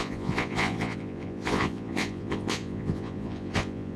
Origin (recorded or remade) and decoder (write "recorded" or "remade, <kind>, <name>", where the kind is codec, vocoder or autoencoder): remade, vocoder, Vocos